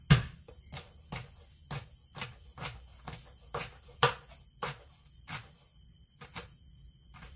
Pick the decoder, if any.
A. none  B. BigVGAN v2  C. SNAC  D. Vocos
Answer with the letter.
A